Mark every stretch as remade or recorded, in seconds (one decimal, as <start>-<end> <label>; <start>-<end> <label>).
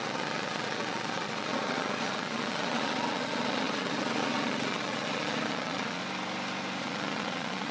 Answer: 0.0-6.0 remade; 6.0-6.8 recorded; 6.8-7.7 remade